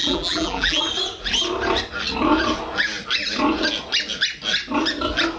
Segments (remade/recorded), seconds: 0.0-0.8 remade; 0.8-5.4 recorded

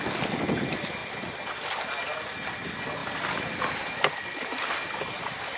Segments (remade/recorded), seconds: 0.0-1.0 recorded; 1.0-1.7 remade; 1.7-3.0 recorded; 3.0-4.0 remade; 4.0-5.6 recorded

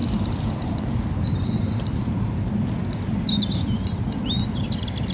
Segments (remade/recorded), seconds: 0.0-0.7 remade; 0.7-5.1 recorded